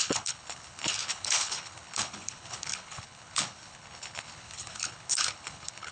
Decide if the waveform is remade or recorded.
remade